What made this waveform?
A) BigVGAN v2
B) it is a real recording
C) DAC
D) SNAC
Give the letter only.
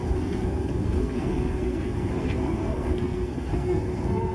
D